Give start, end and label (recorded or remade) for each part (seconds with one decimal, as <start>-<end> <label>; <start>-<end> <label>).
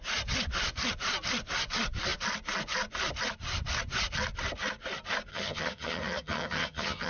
0.0-5.3 recorded; 5.3-7.1 remade